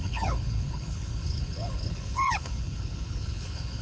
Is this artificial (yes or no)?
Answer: yes